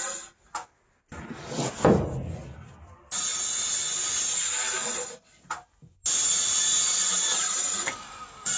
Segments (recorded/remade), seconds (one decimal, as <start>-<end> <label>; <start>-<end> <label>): 0.0-4.8 recorded; 4.8-5.5 remade; 5.5-8.6 recorded